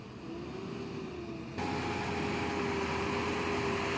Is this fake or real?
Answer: real